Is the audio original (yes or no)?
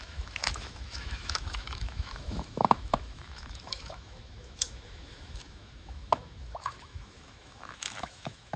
no